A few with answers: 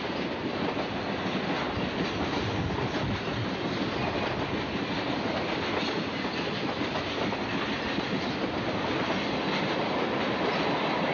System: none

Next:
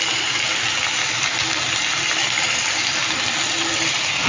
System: none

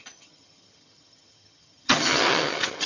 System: vocoder, HiFi-GAN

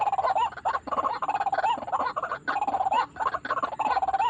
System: none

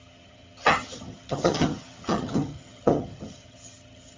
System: vocoder, HiFi-GAN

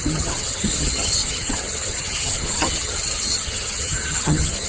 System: vocoder, HiFi-GAN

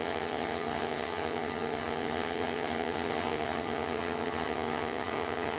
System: vocoder, HiFi-GAN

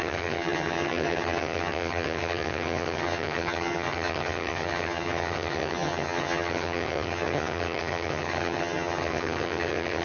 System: vocoder, HiFi-GAN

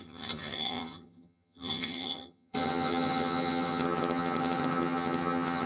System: vocoder, HiFi-GAN